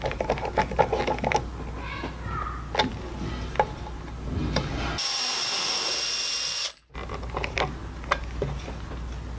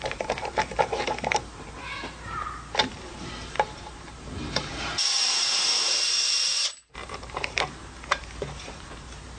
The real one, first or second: first